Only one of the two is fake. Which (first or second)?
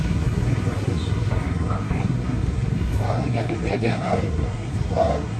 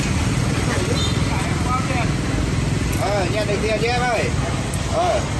first